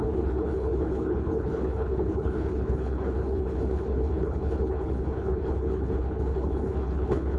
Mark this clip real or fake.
fake